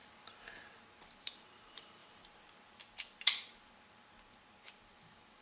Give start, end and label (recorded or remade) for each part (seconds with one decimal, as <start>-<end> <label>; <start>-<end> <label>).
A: 0.0-1.0 recorded; 1.0-5.4 remade